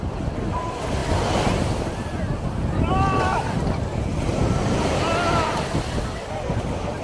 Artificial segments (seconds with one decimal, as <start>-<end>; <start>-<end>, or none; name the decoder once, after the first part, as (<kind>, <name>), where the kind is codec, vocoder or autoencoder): none